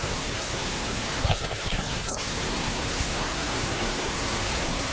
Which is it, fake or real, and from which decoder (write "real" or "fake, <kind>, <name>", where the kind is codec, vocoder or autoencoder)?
fake, codec, SNAC